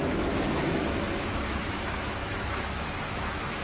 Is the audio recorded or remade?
remade